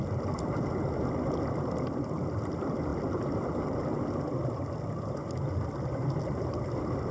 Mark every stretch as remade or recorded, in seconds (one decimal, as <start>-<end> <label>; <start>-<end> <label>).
0.0-7.1 recorded